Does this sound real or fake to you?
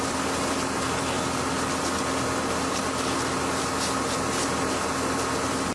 real